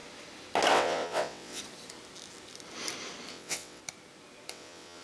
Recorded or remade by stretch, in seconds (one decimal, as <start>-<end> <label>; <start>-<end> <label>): 0.0-0.7 recorded; 0.7-1.6 remade; 1.6-3.3 recorded; 3.3-3.8 remade; 3.8-4.5 recorded; 4.5-5.0 remade